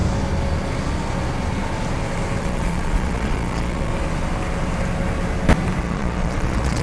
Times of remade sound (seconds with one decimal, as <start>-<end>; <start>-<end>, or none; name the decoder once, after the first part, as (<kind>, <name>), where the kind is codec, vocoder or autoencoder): 2.4-3.9 (vocoder, Vocos); 5.8-6.8